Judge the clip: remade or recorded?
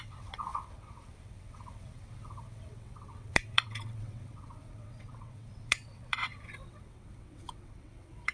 remade